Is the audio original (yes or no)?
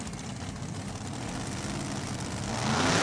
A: yes